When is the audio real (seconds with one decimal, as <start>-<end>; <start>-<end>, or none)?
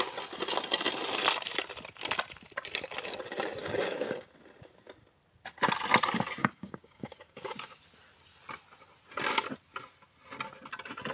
0.0-3.6; 4.3-6.4; 7.8-11.1